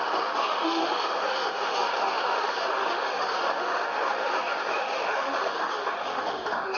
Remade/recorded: remade